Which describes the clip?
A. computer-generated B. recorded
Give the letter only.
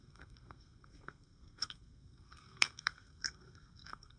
A